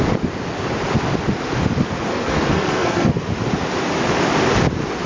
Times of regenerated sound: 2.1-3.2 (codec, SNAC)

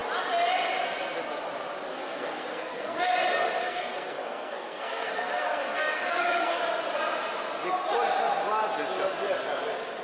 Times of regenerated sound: 1.9-3.1 (codec, SNAC); 3.6-6.6

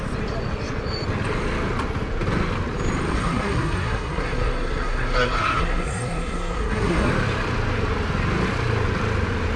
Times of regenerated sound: 3.1-7.1 (codec, SNAC)

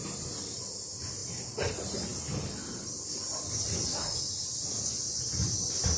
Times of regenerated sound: none